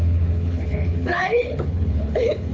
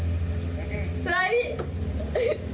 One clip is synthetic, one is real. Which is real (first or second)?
second